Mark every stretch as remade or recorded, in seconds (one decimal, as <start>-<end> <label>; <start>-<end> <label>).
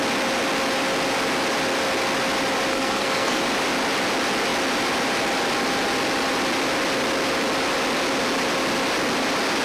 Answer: 0.0-2.7 recorded; 2.7-3.4 remade; 3.4-9.6 recorded